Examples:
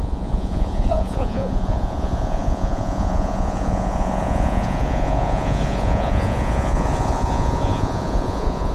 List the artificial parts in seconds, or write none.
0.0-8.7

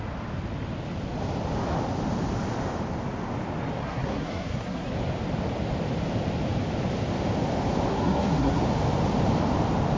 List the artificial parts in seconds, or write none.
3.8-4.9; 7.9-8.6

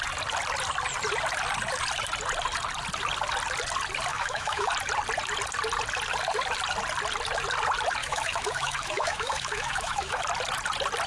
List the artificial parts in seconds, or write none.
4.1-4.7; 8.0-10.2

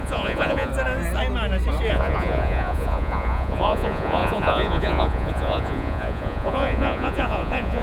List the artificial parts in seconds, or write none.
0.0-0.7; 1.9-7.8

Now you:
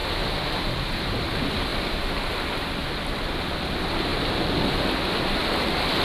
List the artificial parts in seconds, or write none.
0.0-1.0; 1.7-3.5; 4.1-4.8

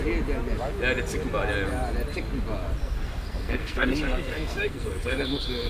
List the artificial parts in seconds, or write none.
2.8-5.7